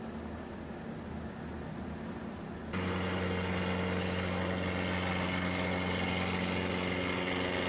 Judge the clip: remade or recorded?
recorded